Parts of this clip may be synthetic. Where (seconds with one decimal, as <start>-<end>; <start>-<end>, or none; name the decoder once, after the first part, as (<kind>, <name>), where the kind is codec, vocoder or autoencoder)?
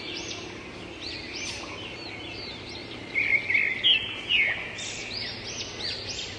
none